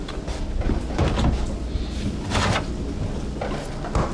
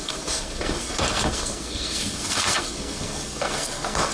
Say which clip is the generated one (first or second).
second